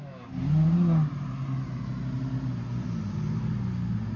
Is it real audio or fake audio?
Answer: real